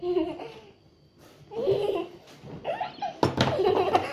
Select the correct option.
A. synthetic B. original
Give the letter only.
B